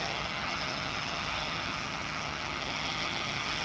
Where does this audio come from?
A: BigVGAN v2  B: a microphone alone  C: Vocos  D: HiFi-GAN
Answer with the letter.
D